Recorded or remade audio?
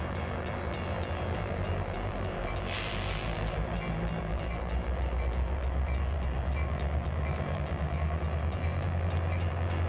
remade